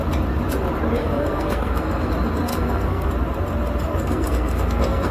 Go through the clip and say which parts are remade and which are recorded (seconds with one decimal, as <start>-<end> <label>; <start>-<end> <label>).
0.0-1.0 recorded; 1.0-2.1 remade; 2.1-2.5 recorded; 2.5-3.1 remade; 3.1-3.9 recorded; 3.9-5.1 remade